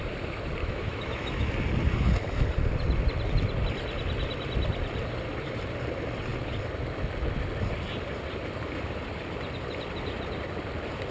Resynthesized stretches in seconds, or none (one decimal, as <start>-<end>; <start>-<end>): 0.6-1.5